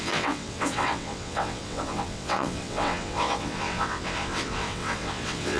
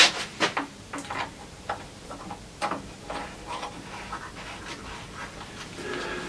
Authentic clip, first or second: second